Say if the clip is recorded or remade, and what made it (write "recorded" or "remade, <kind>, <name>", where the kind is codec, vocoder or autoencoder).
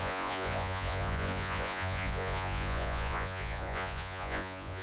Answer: remade, vocoder, Vocos